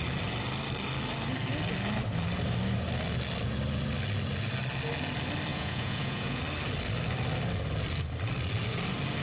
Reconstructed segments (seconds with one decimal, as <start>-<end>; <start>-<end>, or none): 5.5-6.4